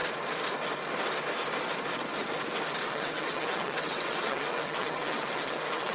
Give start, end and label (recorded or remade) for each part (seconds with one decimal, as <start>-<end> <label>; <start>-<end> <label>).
0.0-2.8 recorded; 2.8-5.9 remade